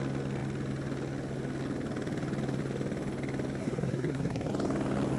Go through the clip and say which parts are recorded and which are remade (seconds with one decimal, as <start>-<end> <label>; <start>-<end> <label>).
0.0-3.6 recorded; 3.6-4.5 remade; 4.5-5.2 recorded